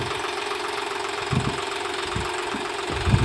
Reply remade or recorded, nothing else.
remade